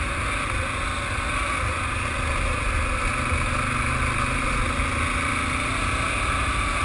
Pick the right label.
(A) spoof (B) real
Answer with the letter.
B